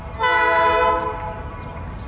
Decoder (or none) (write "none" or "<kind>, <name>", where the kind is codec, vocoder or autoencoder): none